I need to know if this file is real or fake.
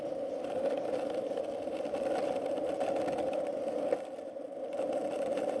fake